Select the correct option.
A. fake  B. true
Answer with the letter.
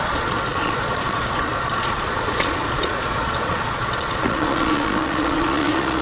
A